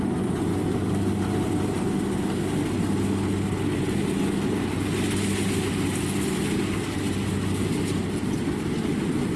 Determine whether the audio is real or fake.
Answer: real